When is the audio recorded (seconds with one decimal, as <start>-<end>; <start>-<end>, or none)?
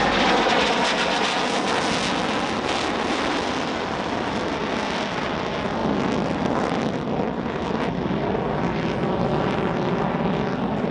0.0-10.9